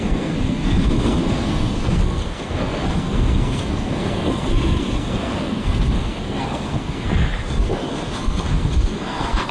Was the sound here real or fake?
fake